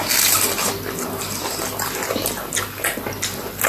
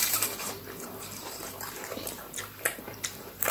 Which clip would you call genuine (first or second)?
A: first